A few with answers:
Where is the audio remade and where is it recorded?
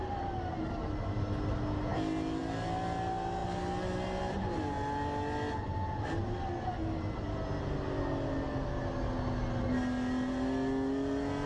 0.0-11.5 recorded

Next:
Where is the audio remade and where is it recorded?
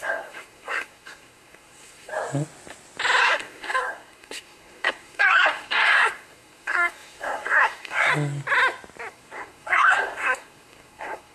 0.0-2.1 remade; 2.1-3.2 recorded; 3.2-8.1 remade; 8.1-9.1 recorded; 9.1-11.3 remade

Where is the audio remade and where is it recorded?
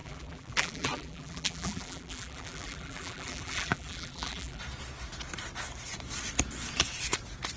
0.0-4.6 remade; 4.6-7.6 recorded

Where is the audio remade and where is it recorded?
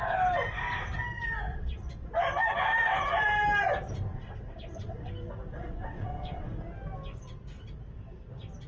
0.0-1.5 recorded; 1.5-2.1 remade; 2.1-4.1 recorded; 4.1-5.1 remade; 5.1-5.5 recorded; 5.5-6.5 remade; 6.5-8.7 recorded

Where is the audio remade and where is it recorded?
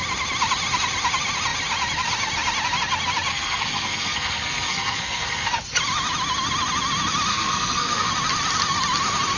0.0-3.3 recorded; 3.3-5.5 remade; 5.5-7.3 recorded; 7.3-8.1 remade; 8.1-9.4 recorded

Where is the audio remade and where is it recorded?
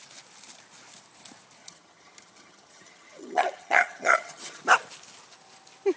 0.0-1.6 recorded; 1.6-4.6 remade; 4.6-6.0 recorded